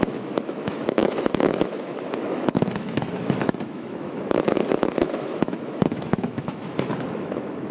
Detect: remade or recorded remade